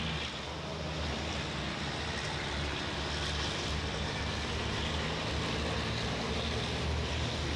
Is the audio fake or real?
real